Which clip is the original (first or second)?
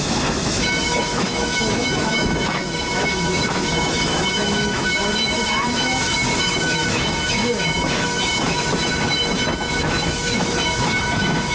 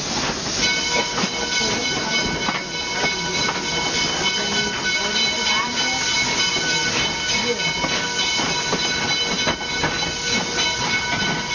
second